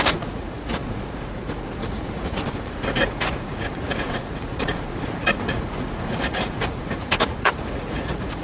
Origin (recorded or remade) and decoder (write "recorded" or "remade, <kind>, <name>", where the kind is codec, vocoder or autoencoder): remade, vocoder, Vocos